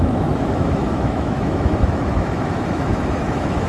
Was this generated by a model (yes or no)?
yes